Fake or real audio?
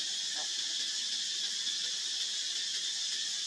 real